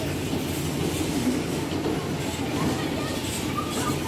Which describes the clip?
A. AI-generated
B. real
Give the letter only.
B